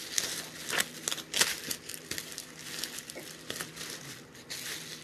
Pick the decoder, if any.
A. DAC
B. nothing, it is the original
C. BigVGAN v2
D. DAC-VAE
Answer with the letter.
B